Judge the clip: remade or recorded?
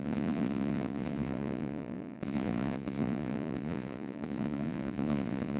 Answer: remade